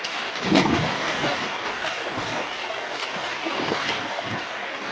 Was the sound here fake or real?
fake